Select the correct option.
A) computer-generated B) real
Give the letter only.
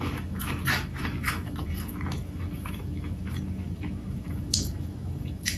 A